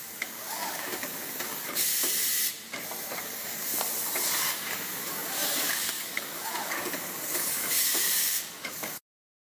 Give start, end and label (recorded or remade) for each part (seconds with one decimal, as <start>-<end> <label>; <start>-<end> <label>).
0.0-1.9 remade; 1.9-3.2 recorded; 3.2-3.7 remade; 3.7-4.5 recorded; 4.5-9.5 remade